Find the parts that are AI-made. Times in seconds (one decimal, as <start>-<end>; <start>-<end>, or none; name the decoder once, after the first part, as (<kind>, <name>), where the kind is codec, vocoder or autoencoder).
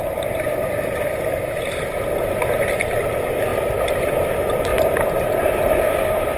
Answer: none